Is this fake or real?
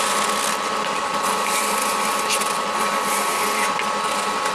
real